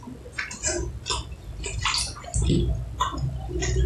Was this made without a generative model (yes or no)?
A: yes